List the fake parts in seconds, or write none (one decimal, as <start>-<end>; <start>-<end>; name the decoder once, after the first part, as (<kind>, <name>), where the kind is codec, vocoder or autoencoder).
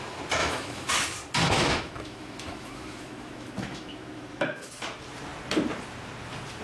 0.4-0.9 (autoencoder, DAC-VAE); 1.4-4.7